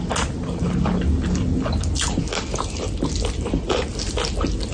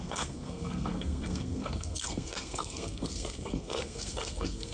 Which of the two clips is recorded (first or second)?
first